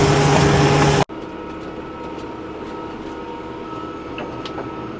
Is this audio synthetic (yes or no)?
no